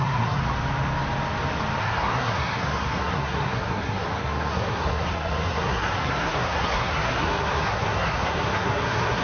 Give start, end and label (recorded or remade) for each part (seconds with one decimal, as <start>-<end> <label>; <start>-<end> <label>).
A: 0.0-0.4 remade; 0.4-1.8 recorded; 1.8-9.2 remade